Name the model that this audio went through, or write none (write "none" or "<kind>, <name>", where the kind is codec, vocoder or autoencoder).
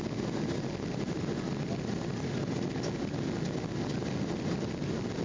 none